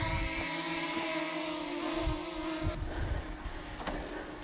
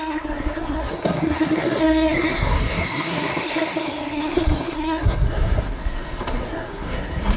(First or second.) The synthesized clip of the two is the second